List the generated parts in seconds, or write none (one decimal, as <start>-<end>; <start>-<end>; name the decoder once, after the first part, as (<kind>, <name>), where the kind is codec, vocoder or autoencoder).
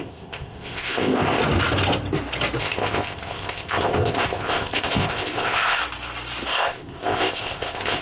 0.0-1.4 (codec, ZipCodec); 2.6-5.8; 6.5-8.0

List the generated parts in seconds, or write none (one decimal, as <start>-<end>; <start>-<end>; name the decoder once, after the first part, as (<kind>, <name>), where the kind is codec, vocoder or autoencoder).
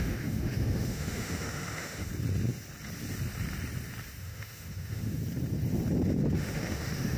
0.0-2.1 (autoencoder, DAC-VAE); 4.2-5.2; 6.4-7.2